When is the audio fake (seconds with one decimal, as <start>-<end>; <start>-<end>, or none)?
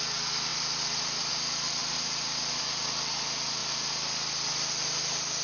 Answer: 0.5-1.3; 1.8-2.6; 3.6-4.5